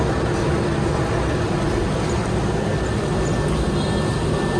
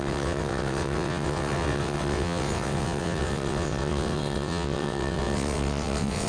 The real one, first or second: first